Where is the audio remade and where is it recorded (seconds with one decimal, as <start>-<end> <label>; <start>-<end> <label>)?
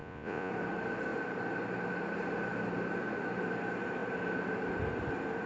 0.0-0.5 remade; 0.5-5.5 recorded